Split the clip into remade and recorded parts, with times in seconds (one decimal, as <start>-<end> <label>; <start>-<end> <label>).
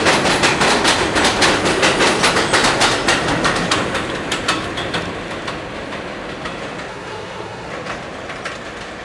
0.0-6.9 recorded; 6.9-7.7 remade; 7.7-9.0 recorded